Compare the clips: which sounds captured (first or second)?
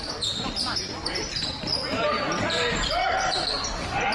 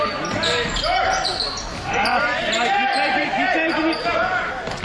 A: second